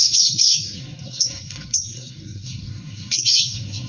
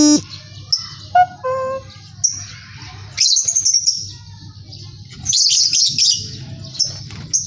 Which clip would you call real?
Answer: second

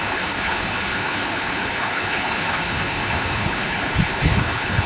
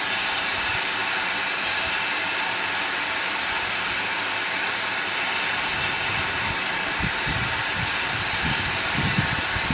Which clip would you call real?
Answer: second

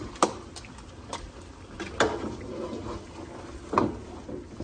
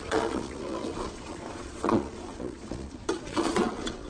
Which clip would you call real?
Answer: first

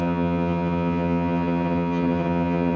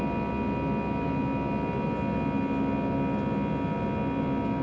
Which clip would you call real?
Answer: second